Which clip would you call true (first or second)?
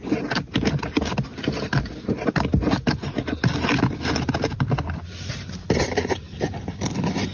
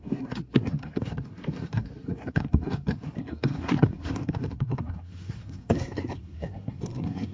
first